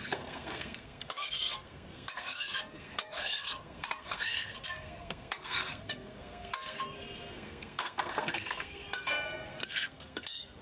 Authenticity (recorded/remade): remade